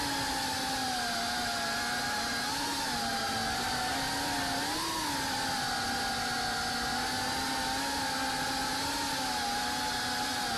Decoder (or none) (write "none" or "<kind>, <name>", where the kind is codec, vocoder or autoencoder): none